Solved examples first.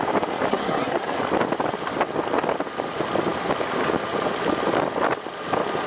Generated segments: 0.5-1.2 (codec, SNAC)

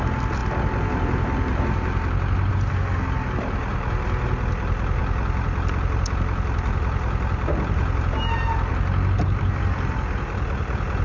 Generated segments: none

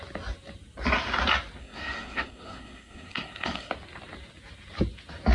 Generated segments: 1.6-3.7 (codec, SNAC)

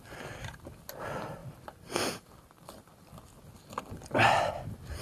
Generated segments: none

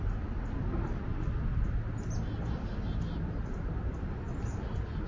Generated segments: none

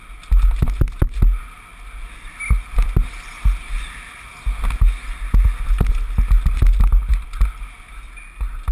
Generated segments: none